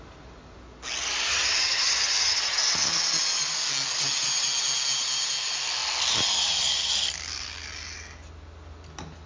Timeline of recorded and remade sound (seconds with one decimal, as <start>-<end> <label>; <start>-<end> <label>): 0.0-1.3 recorded; 1.3-2.6 remade; 2.6-9.3 recorded